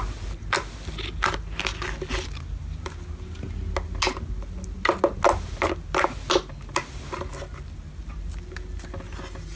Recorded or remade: recorded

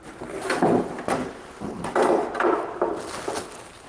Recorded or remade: recorded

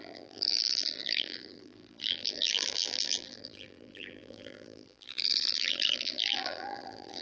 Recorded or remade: remade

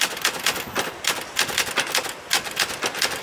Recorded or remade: recorded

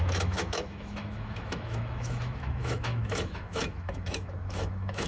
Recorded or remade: remade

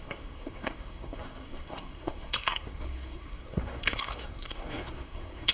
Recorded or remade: remade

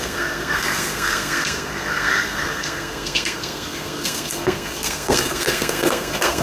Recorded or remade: remade